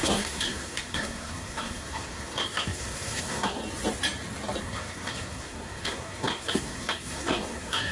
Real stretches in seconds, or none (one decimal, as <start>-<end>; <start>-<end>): 3.6-4.6